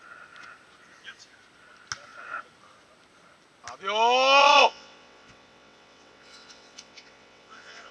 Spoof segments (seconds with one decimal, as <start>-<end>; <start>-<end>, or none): 4.4-7.9